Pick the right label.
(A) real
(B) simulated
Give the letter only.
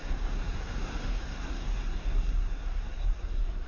B